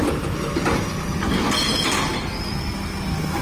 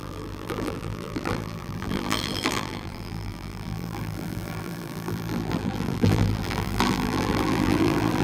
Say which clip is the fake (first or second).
second